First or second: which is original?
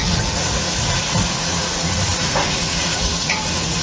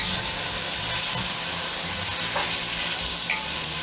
second